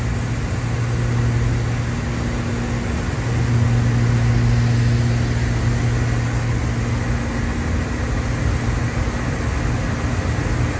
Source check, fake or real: real